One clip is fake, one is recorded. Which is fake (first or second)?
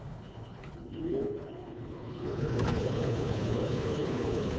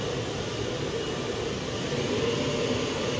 first